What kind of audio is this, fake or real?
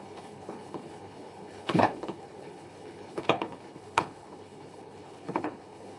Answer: fake